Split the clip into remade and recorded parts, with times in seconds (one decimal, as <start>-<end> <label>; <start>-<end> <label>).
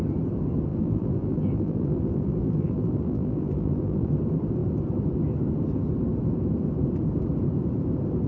0.0-0.7 recorded; 0.7-4.1 remade; 4.1-8.3 recorded